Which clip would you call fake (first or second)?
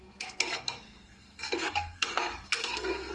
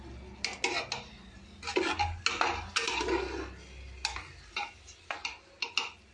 first